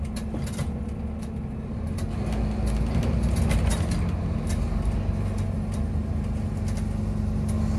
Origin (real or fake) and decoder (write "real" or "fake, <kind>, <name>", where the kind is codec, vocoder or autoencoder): real